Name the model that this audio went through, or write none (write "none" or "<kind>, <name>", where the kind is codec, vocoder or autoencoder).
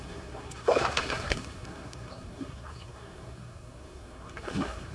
codec, SNAC